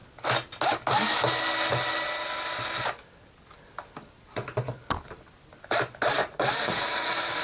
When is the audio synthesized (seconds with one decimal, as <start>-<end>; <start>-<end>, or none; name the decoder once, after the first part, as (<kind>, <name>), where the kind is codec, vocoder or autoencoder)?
6.2-7.4 (vocoder, Vocos)